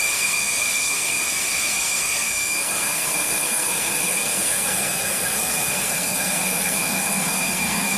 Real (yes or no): no